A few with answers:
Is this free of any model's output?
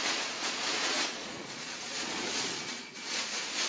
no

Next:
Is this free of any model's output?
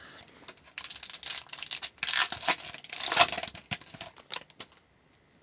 yes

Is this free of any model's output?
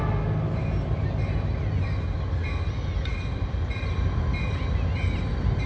yes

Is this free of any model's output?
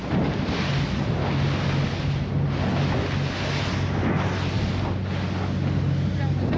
yes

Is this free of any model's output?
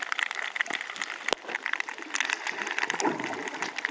yes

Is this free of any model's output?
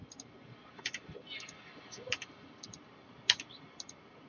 yes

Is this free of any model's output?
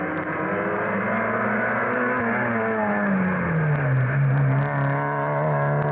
yes